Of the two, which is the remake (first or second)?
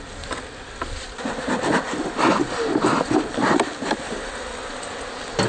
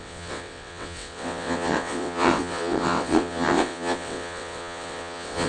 second